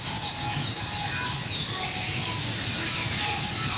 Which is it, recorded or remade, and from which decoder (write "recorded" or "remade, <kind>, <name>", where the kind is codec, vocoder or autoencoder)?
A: recorded